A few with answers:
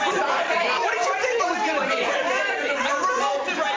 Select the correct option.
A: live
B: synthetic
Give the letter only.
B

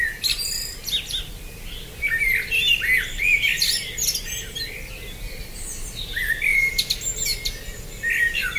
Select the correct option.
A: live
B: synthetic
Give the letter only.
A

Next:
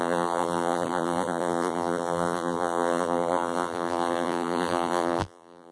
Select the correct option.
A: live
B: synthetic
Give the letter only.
B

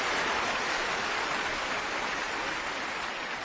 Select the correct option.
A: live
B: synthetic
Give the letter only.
B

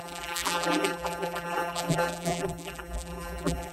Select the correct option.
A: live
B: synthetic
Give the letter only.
B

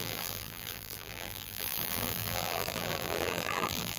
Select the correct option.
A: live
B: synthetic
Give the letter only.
B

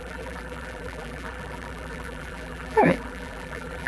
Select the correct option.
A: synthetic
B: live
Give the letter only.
A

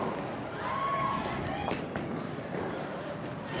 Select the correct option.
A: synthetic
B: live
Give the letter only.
B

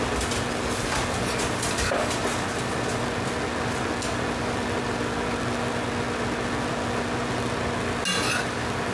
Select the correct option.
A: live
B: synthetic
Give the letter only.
A